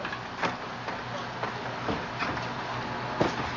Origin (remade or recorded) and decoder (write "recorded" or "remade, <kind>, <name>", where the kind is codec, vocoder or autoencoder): recorded